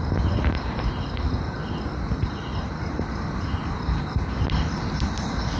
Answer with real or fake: real